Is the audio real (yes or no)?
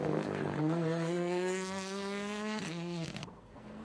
no